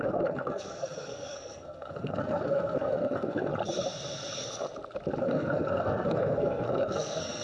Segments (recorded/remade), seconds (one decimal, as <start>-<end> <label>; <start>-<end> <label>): 0.0-3.5 remade; 3.5-5.2 recorded; 5.2-7.4 remade